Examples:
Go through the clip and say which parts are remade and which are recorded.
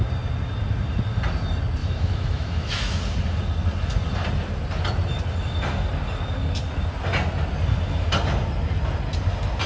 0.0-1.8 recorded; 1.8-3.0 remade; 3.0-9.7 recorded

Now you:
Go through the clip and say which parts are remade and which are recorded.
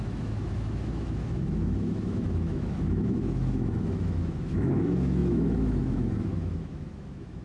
0.0-7.4 remade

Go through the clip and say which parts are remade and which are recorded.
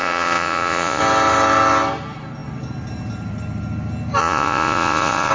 0.0-1.0 remade; 1.0-4.2 recorded; 4.2-5.3 remade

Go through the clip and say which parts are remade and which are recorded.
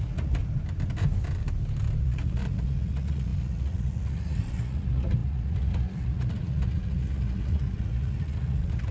0.0-0.4 remade; 0.4-2.0 recorded; 2.0-8.9 remade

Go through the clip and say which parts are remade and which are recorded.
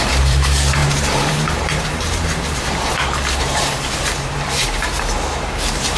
0.0-6.0 remade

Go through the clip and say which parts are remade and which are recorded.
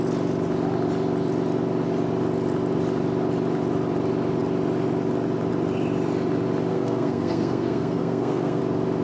0.0-6.7 recorded; 6.7-8.6 remade; 8.6-9.0 recorded